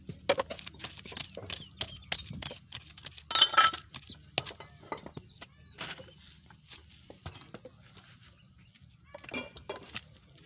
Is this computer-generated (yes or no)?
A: no